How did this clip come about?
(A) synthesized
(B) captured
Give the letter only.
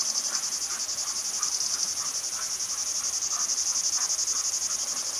B